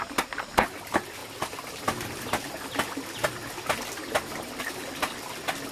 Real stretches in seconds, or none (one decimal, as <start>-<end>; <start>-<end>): 0.0-5.7